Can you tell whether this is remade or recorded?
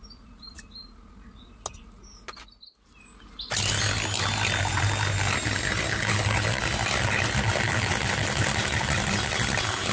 recorded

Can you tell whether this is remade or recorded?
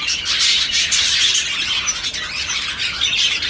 recorded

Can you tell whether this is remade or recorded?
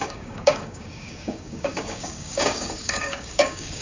remade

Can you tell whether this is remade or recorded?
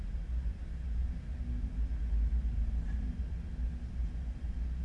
recorded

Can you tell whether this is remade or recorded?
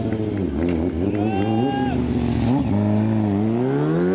recorded